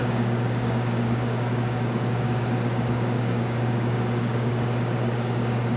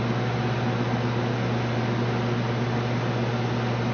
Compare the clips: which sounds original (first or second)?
second